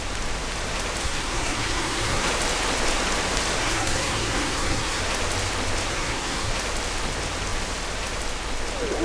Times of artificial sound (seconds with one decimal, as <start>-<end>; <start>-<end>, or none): 1.0-2.3; 3.6-5.0; 5.9-6.5